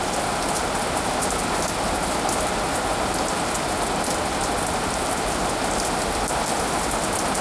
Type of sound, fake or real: real